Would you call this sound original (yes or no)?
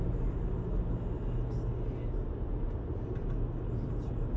yes